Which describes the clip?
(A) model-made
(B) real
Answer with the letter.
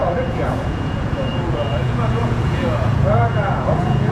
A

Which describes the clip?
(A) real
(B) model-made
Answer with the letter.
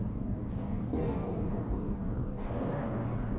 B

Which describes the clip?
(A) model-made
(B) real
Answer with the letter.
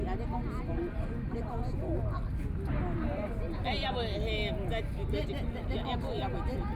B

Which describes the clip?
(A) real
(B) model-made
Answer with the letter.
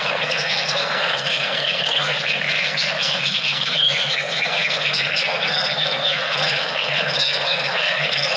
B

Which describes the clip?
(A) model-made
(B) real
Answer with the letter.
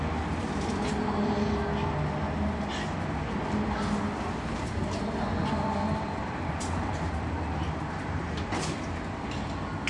B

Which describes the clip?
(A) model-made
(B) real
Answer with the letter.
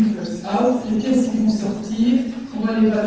B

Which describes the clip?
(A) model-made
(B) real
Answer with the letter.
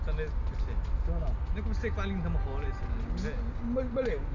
B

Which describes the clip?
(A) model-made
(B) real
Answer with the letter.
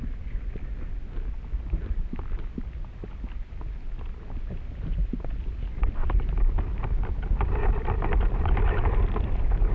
B